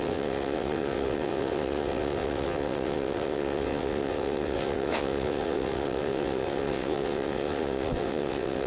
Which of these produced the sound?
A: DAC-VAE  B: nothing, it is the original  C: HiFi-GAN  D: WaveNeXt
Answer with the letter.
D